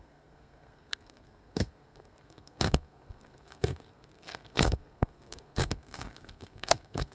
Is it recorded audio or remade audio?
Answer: remade